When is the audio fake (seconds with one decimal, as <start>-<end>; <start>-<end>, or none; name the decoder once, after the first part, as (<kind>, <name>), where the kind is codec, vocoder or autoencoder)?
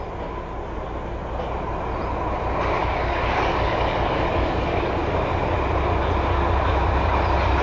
2.8-5.0 (codec, DAC)